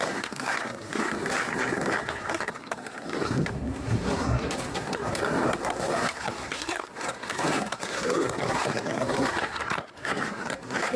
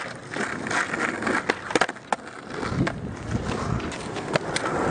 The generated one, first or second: first